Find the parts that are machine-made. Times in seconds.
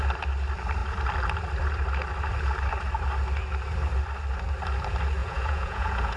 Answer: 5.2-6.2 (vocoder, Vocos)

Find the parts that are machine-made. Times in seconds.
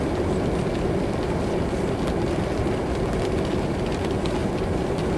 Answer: none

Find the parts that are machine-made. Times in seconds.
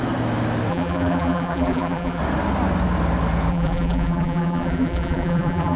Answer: 0.7-2.2 (vocoder, BigVGAN v2); 3.5-5.8